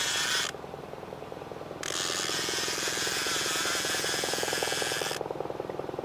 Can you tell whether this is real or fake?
real